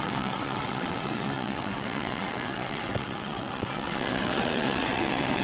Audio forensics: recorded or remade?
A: remade